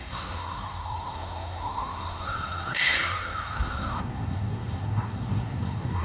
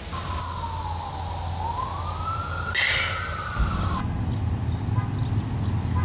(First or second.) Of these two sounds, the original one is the second